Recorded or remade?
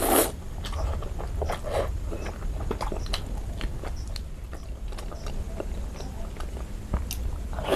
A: recorded